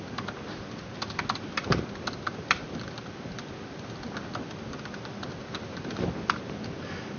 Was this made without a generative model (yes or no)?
yes